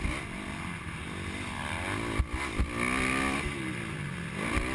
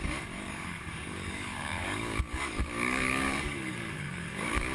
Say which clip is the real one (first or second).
first